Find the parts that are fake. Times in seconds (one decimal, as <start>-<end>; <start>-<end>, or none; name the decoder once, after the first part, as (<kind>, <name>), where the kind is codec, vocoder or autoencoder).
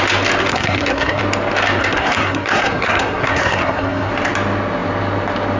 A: 0.5-1.2 (codec, SNAC); 1.8-4.1